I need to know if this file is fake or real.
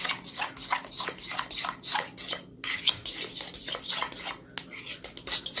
real